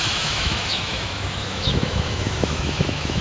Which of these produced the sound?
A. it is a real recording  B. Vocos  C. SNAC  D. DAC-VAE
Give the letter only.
D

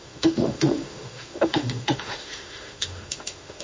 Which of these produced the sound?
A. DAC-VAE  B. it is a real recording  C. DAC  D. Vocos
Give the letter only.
A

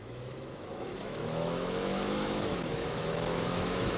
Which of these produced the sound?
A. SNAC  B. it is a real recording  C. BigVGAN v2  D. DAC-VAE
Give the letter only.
D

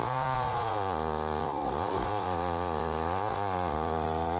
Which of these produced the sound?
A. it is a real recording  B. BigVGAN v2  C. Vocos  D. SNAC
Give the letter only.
C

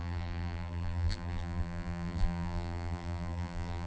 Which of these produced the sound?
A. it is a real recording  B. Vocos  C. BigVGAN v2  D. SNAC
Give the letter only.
C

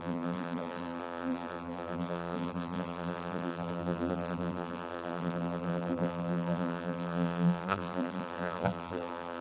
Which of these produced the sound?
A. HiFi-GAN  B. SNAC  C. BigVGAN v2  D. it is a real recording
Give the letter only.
C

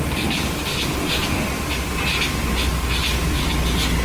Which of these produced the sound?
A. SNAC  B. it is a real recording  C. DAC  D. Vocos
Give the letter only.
B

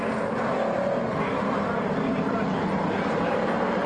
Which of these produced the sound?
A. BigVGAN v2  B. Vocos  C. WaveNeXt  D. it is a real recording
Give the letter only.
D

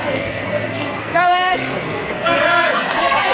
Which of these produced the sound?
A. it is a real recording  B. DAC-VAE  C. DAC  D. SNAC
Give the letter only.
D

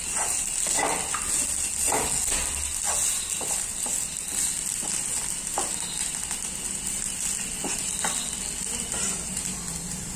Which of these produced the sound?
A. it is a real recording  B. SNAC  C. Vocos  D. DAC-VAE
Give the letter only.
A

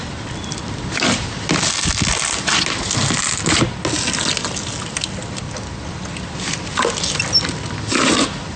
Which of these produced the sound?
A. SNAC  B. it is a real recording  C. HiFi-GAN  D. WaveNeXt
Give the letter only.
B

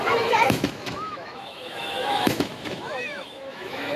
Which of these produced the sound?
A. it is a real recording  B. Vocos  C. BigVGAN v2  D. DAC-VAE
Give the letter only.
D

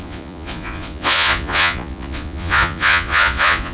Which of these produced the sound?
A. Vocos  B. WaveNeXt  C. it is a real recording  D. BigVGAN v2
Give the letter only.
A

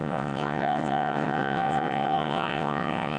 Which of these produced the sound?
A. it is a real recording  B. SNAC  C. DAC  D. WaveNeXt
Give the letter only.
D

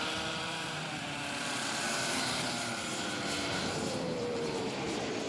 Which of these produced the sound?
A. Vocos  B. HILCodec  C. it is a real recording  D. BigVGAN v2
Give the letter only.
D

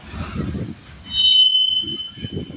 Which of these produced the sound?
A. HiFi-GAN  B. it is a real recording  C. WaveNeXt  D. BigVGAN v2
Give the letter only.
B